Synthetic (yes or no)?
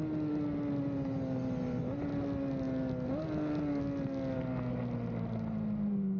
no